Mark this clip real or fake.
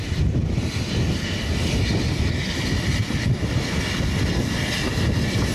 real